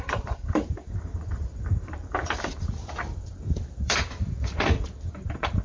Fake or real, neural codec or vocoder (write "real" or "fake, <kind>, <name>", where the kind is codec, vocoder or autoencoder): fake, vocoder, BigVGAN v2